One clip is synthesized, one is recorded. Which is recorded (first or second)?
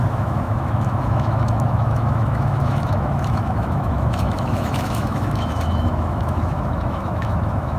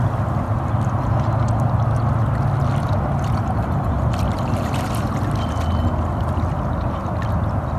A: second